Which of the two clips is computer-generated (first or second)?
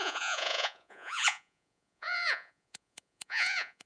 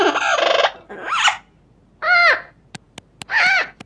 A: first